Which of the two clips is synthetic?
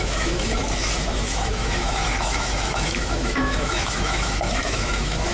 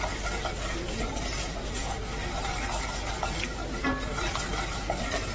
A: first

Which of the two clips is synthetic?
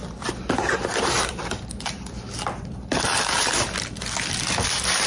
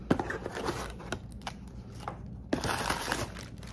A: first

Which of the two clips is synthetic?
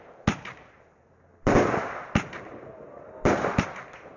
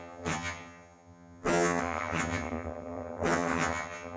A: second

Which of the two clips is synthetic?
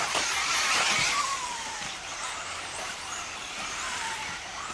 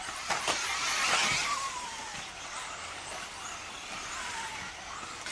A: first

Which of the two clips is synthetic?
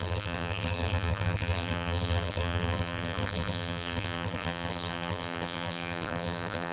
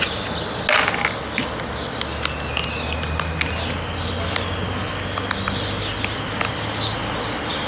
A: first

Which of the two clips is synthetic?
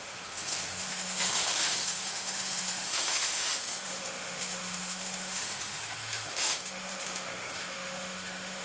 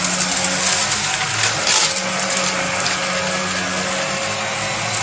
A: first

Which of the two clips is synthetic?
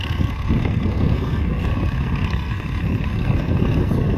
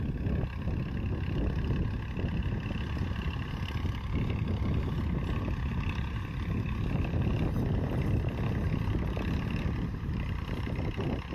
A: first